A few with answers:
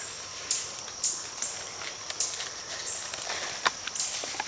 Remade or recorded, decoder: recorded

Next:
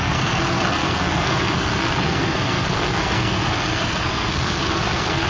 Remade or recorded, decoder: remade, codec, SNAC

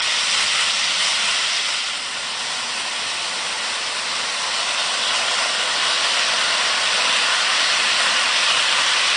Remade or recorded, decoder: recorded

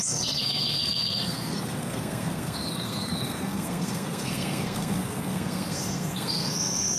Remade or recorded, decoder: remade, codec, SNAC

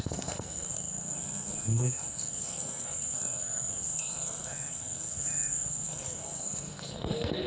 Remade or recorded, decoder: remade, codec, SNAC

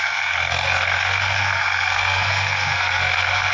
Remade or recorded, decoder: remade, codec, SNAC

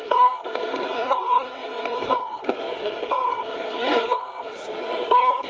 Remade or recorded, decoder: remade, codec, SNAC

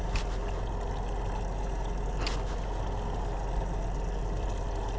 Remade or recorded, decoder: recorded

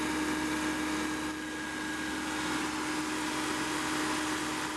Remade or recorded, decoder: recorded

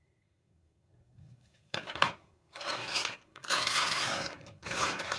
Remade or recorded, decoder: remade, codec, SNAC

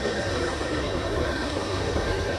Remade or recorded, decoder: remade, codec, SNAC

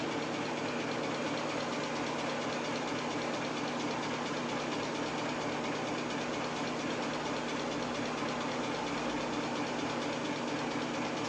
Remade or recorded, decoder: recorded